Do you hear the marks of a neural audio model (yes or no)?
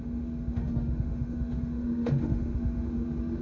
yes